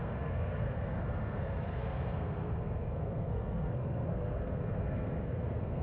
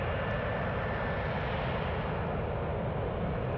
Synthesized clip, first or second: first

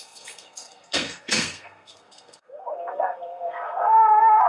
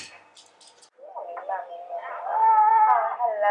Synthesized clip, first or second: first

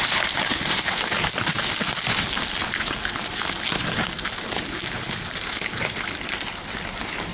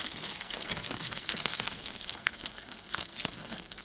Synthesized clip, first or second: second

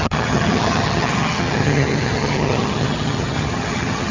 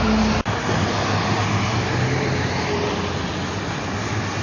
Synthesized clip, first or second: first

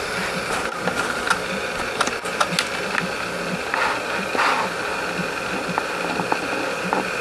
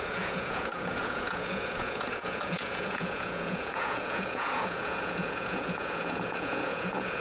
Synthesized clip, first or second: second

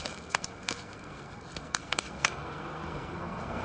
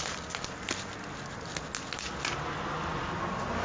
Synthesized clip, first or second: first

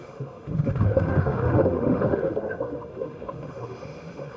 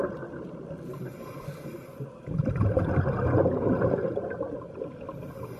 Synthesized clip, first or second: first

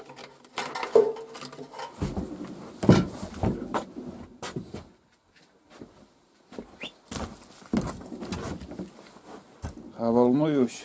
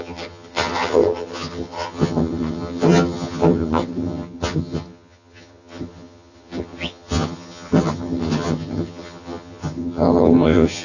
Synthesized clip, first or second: second